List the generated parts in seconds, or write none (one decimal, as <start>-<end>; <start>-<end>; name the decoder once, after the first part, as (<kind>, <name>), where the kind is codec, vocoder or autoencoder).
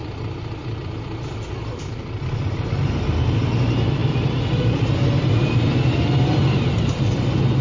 0.0-2.4 (vocoder, BigVGAN v2); 4.0-7.1